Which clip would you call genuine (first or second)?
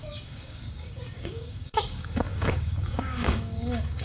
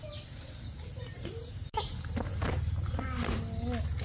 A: second